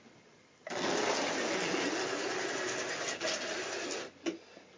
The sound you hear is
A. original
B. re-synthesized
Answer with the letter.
A